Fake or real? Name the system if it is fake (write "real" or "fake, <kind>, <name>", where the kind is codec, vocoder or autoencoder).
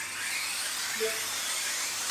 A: real